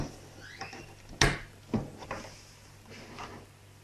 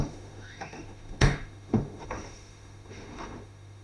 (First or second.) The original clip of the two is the first